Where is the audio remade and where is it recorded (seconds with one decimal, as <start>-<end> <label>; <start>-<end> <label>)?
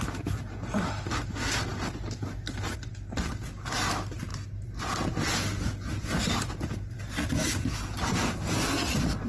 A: 0.0-9.3 recorded